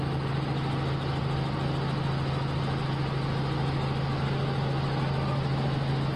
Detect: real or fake real